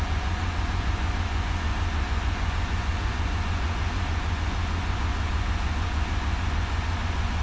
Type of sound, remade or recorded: remade